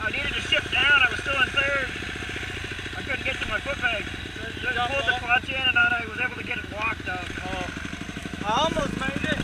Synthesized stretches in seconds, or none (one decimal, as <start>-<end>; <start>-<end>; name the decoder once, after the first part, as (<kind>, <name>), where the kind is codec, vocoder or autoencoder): 5.8-6.9 (autoencoder, DAC-VAE); 8.2-8.8